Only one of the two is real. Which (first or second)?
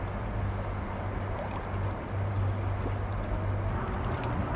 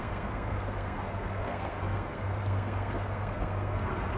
first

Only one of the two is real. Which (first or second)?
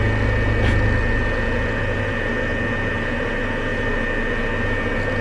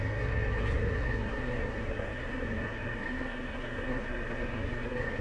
first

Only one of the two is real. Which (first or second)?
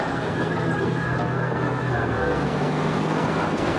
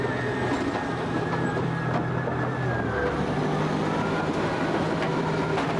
second